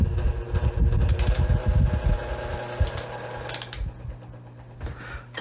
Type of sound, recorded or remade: recorded